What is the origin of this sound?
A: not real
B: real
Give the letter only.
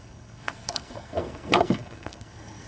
A